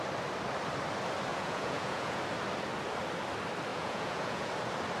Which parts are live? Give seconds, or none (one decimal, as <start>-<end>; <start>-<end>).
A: 0.0-1.3; 2.2-3.7; 4.5-5.0